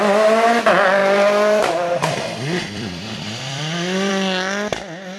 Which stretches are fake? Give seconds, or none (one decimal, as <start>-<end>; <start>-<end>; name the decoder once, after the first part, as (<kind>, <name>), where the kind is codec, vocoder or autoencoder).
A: 1.0-4.1 (vocoder, BigVGAN v2)